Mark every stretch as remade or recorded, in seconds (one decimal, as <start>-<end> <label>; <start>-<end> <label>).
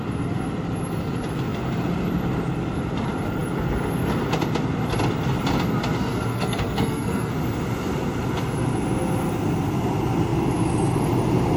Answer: 0.0-6.3 recorded; 6.3-7.3 remade; 7.3-11.6 recorded